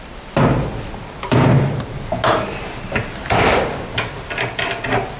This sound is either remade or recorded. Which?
recorded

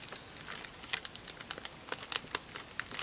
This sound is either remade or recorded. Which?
recorded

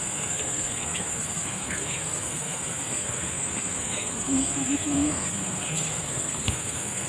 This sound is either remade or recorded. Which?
remade